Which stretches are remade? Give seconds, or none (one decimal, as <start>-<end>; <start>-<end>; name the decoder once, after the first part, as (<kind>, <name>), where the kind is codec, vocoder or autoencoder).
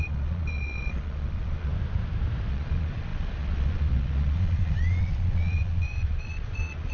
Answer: 0.0-1.7 (vocoder, Vocos); 2.5-6.9